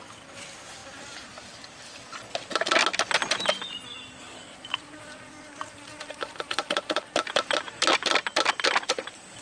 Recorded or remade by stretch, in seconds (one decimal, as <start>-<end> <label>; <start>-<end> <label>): 0.0-9.4 recorded